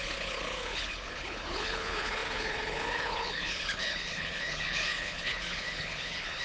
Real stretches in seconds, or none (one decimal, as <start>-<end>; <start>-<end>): none